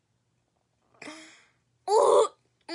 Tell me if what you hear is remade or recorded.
recorded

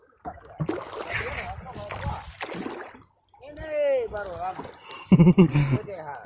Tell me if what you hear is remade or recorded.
recorded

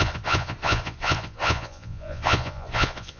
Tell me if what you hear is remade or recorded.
remade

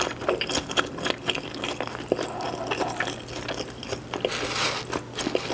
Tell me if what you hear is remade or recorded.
recorded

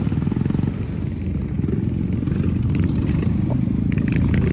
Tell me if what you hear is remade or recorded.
recorded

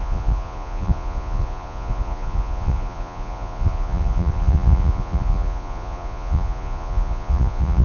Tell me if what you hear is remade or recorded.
remade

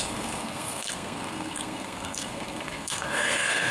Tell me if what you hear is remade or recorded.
remade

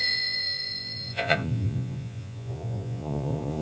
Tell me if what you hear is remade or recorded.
remade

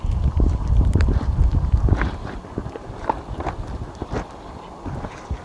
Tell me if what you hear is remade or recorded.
recorded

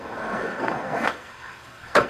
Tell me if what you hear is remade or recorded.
remade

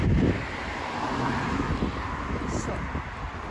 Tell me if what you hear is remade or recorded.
recorded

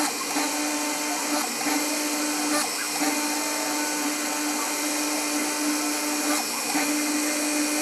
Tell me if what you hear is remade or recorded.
recorded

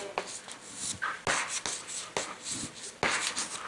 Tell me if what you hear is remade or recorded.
recorded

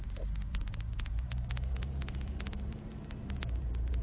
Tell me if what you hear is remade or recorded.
remade